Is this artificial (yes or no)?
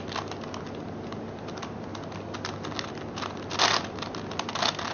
no